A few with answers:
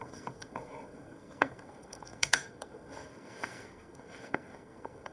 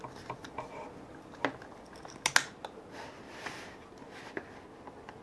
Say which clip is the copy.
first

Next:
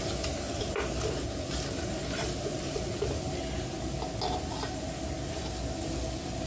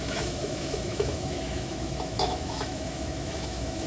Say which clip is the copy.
second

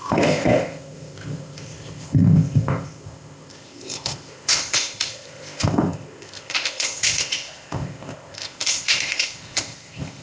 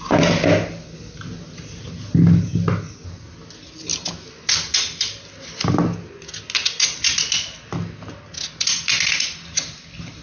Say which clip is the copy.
first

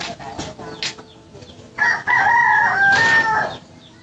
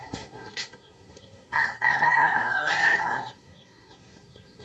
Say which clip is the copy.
second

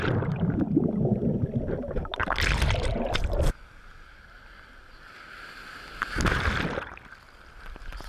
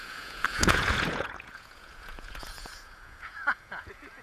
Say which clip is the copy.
second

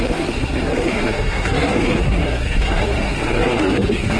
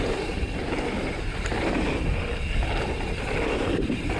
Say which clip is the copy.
first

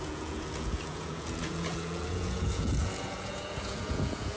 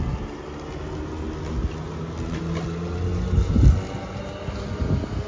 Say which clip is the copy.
first